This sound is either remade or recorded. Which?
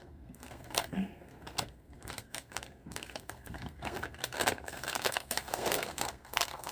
remade